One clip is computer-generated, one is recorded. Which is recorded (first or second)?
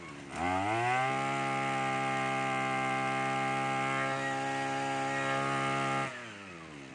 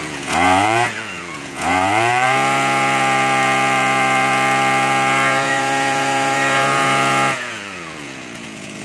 first